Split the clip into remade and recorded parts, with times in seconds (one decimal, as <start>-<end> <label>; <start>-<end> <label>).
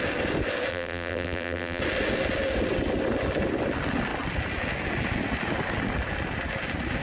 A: 0.0-0.7 recorded; 0.7-1.8 remade; 1.8-7.0 recorded